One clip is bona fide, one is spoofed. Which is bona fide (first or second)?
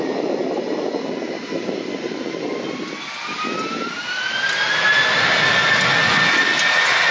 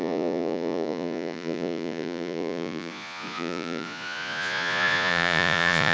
first